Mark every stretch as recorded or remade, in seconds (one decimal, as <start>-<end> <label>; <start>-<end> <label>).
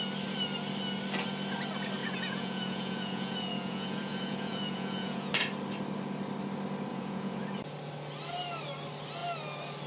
0.0-2.0 recorded; 2.0-5.3 remade; 5.3-6.9 recorded; 6.9-7.4 remade; 7.4-9.9 recorded